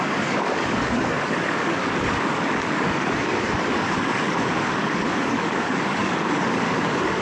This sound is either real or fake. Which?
fake